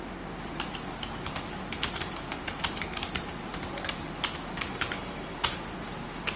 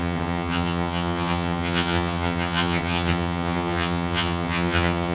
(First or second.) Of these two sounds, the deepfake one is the second